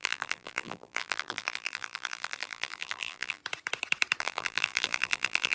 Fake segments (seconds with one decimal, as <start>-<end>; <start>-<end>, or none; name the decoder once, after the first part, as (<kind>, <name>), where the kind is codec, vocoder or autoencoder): 0.0-3.4 (vocoder, BigVGAN v2); 4.2-5.5